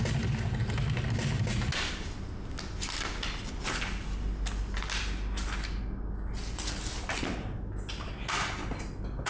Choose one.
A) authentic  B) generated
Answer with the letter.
A